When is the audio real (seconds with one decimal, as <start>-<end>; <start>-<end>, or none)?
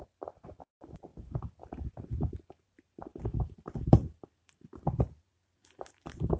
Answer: 1.1-1.9